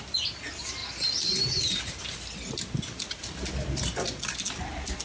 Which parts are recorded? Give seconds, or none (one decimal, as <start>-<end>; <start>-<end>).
0.0-5.0